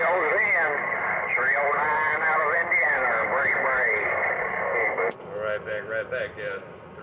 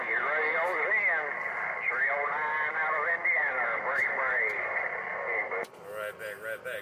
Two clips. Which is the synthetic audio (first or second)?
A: first